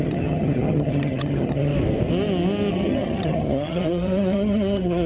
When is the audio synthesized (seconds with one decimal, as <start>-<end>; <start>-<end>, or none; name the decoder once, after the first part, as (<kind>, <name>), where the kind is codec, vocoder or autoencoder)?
0.0-1.7 (vocoder, HiFi-GAN); 2.7-5.1